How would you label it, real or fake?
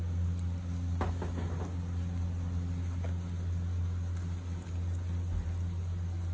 real